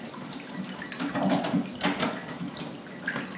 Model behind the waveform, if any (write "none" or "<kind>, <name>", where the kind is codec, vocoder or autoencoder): none